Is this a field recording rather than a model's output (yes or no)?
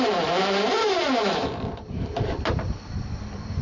no